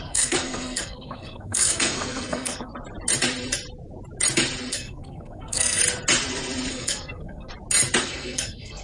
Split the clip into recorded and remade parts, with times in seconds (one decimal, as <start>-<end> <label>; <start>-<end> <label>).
0.0-2.7 remade; 2.7-4.7 recorded; 4.7-5.8 remade; 5.8-6.7 recorded; 6.7-7.5 remade; 7.5-8.0 recorded; 8.0-8.8 remade